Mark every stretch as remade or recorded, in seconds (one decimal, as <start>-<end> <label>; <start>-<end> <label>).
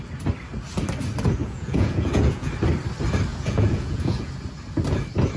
0.0-1.4 recorded; 1.4-2.5 remade; 2.5-3.3 recorded; 3.3-4.3 remade; 4.3-5.4 recorded